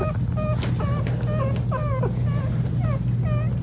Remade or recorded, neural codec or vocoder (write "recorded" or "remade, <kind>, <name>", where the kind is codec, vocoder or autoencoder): recorded